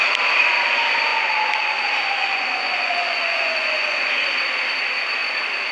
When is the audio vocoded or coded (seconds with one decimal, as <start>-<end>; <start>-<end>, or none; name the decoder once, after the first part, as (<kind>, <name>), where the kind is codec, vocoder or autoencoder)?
1.1-1.8 (vocoder, Vocos); 2.2-4.1